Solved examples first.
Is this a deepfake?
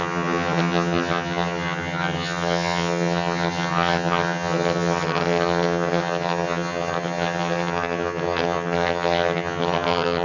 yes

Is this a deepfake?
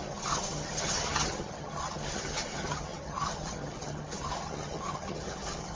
yes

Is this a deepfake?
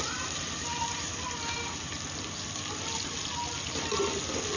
no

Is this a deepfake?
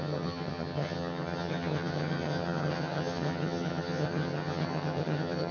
yes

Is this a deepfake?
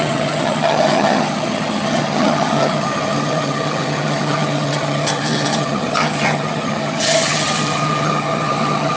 yes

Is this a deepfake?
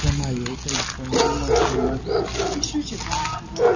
no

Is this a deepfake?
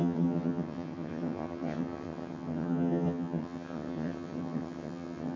yes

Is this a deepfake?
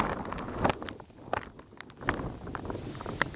no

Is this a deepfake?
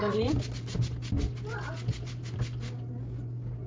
no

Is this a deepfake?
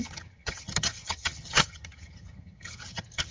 yes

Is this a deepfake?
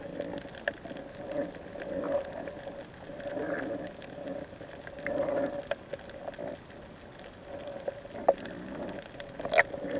no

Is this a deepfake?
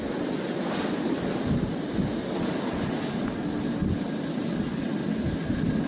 no